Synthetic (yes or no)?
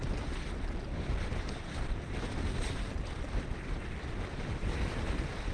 no